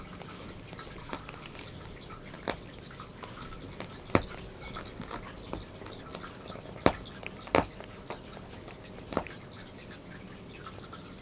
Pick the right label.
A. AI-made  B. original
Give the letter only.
B